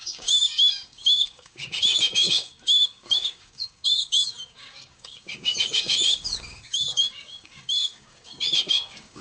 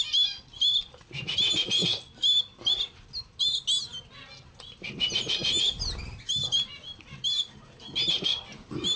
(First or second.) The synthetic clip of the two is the first